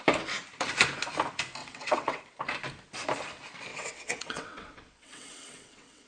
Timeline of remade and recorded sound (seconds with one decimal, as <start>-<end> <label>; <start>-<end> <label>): 0.0-1.6 recorded; 1.6-2.2 remade; 2.2-3.7 recorded; 3.7-6.1 remade